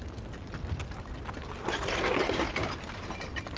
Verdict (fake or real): real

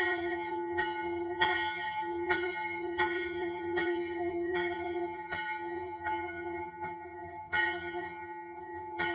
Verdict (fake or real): fake